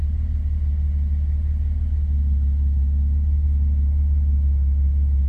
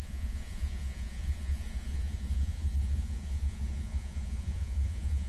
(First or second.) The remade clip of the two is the second